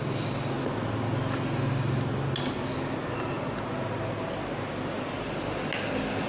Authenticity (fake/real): real